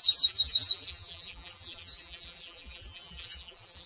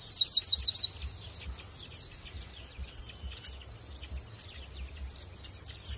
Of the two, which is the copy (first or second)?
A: first